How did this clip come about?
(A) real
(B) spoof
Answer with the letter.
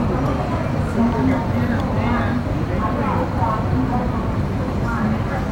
A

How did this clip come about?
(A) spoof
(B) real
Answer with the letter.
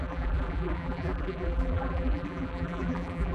A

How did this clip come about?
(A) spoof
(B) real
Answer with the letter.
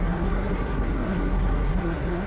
A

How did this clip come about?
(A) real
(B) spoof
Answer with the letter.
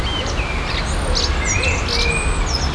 A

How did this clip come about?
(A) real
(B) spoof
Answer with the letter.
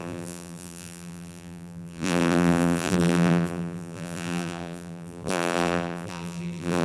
B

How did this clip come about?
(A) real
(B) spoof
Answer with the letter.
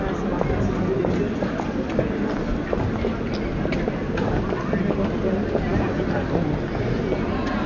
A